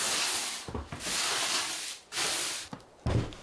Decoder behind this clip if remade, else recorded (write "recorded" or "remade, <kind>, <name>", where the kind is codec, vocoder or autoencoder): recorded